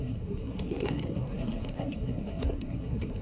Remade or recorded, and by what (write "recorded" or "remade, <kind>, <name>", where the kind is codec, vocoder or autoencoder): remade, codec, SNAC